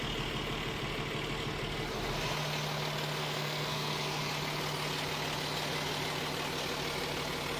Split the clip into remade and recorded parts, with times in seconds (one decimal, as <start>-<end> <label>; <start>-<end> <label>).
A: 0.0-3.2 recorded; 3.2-4.2 remade; 4.2-7.6 recorded